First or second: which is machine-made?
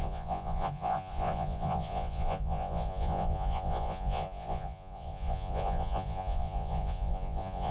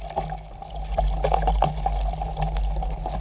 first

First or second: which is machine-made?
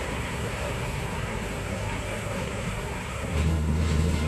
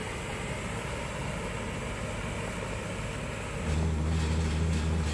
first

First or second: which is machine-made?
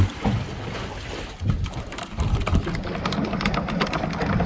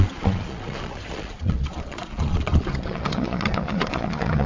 second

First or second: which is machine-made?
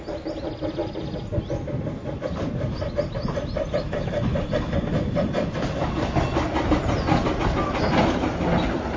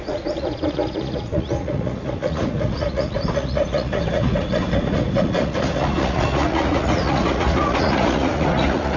second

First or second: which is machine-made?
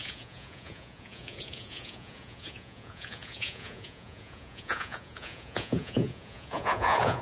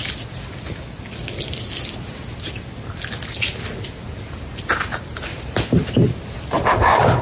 first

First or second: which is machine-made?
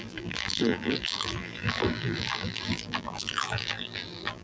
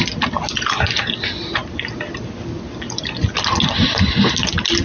first